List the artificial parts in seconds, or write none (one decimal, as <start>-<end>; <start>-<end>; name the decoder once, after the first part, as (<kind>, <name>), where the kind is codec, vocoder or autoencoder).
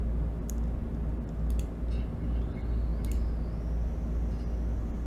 none